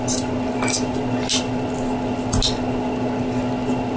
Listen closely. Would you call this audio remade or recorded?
recorded